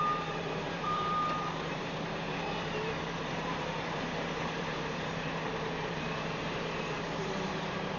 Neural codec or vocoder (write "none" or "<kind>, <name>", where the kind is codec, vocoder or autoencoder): vocoder, BigVGAN v2